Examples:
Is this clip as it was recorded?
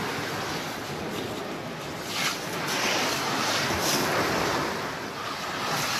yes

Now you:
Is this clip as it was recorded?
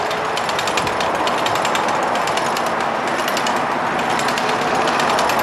yes